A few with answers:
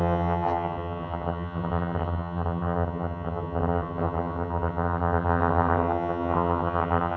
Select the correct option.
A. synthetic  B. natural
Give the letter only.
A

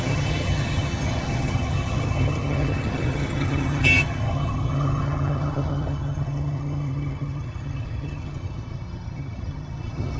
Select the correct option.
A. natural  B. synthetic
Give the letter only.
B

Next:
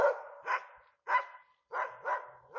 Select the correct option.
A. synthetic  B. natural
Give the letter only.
B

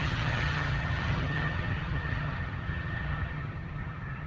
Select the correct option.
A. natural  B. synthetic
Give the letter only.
B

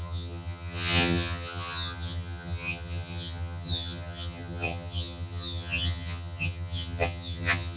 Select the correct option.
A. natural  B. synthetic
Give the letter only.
B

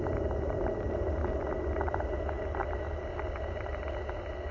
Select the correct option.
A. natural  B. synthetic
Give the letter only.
A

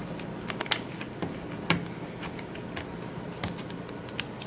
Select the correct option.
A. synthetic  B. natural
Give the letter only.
B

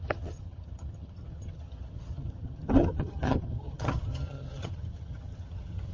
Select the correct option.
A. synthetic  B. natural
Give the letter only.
A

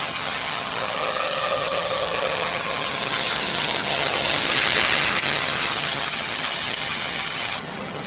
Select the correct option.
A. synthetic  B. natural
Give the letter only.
A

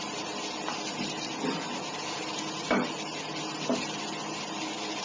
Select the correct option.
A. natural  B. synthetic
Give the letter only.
A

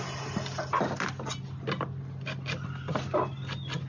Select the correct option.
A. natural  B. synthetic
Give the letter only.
A